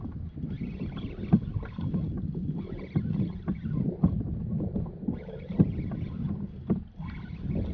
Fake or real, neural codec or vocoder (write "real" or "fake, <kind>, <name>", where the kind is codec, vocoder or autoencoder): real